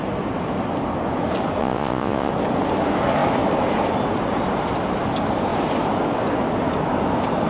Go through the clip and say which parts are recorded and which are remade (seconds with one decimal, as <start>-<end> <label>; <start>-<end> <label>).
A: 0.0-1.6 recorded; 1.6-2.3 remade; 2.3-7.5 recorded